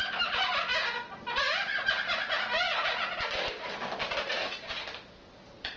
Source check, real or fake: real